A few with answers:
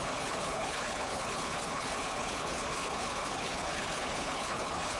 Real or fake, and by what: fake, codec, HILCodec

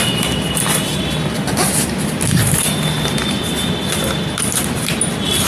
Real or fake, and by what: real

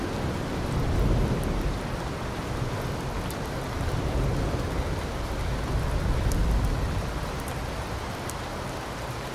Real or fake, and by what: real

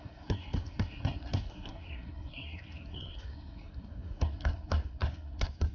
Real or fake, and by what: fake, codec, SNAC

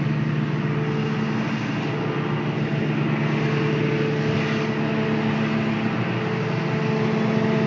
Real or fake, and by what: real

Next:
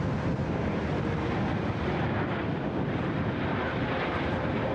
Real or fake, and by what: real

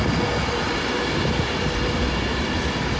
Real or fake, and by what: real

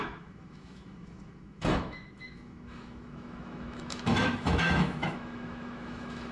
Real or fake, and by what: fake, autoencoder, DAC-VAE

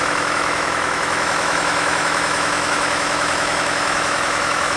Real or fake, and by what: fake, autoencoder, DAC-VAE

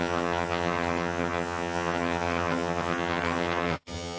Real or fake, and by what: fake, vocoder, HiFi-GAN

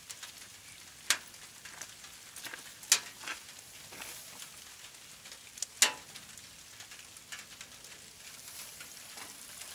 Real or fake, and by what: real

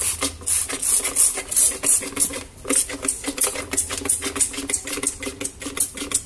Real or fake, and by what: real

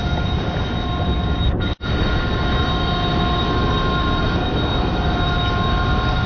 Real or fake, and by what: real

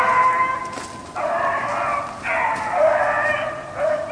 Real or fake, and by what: real